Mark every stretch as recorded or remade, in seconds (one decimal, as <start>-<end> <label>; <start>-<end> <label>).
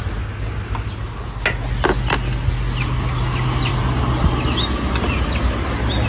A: 0.0-6.1 recorded